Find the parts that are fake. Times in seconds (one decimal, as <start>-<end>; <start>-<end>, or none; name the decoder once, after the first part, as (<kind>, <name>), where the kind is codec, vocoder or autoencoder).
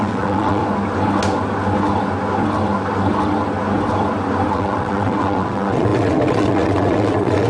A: 0.0-0.6 (vocoder, WaveNeXt); 4.5-7.5